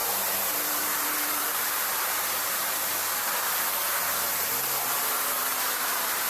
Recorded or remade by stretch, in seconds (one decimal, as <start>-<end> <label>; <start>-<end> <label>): 0.0-2.7 remade; 2.7-5.5 recorded; 5.5-6.3 remade